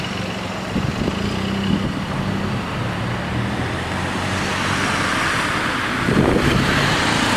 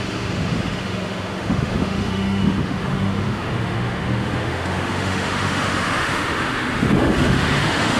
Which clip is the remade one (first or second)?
second